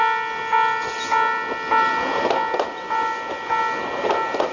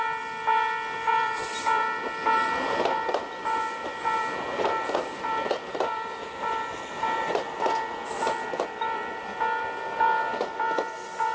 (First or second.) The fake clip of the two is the second